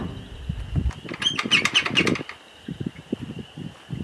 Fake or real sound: real